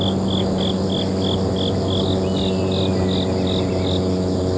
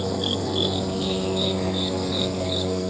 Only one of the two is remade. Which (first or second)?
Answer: second